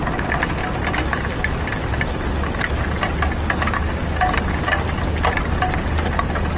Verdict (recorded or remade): recorded